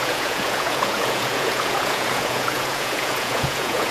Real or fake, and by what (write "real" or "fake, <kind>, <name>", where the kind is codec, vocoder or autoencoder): fake, vocoder, Vocos